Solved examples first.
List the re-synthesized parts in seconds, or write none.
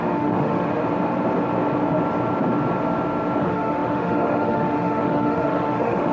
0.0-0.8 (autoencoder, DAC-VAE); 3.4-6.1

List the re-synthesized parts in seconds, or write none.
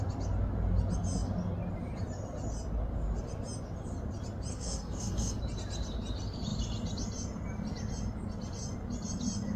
4.5-5.4 (codec, SNAC)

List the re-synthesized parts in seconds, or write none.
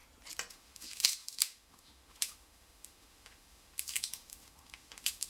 0.5-5.3 (autoencoder, DAC-VAE)